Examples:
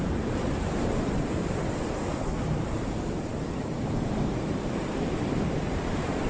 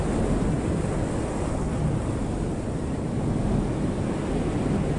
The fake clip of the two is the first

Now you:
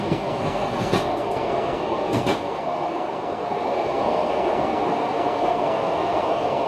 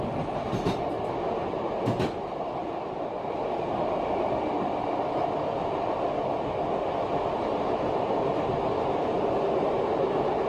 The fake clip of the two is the first